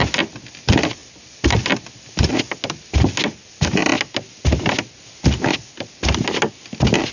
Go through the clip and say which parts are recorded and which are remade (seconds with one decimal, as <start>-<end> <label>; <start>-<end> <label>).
0.0-7.1 recorded